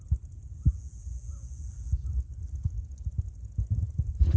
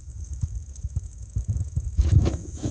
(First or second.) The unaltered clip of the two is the first